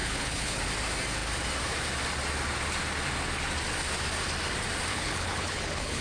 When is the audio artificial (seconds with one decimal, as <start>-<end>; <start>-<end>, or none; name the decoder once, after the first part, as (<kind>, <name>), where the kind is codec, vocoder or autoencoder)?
0.0-0.6 (codec, HILCodec); 4.9-6.0